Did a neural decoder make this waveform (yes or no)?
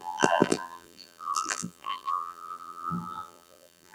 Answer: yes